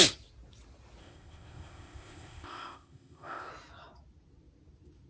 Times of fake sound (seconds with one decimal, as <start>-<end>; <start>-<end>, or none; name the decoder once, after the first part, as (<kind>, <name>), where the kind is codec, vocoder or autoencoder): 1.0-3.5 (codec, ZipCodec)